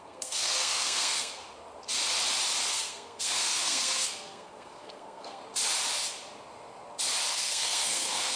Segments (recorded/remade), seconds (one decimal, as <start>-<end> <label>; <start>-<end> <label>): 0.0-1.4 remade; 1.4-2.7 recorded; 2.7-5.4 remade; 5.4-7.3 recorded; 7.3-8.4 remade